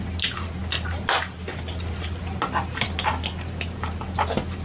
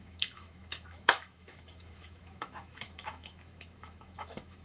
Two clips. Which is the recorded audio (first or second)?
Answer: first